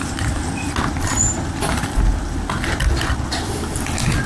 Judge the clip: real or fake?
real